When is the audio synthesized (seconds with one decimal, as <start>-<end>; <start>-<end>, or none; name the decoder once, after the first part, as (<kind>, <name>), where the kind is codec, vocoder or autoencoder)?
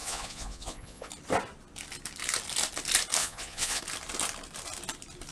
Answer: 0.0-1.1 (vocoder, Vocos); 3.2-3.8